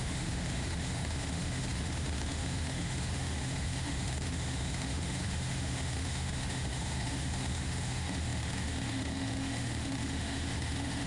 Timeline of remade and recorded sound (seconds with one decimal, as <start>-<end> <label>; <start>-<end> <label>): 0.0-11.1 remade